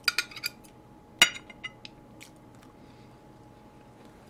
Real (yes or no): yes